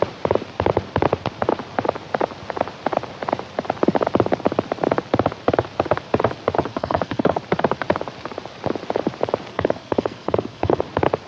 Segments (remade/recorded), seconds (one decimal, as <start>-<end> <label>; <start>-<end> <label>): 0.0-6.7 recorded; 6.7-7.4 remade; 7.4-9.5 recorded; 9.5-10.8 remade; 10.8-11.3 recorded